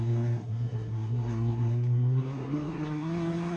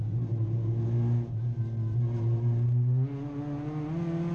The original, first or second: second